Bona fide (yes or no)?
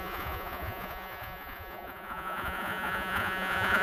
no